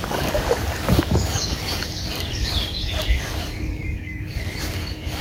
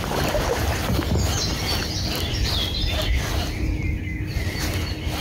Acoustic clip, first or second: second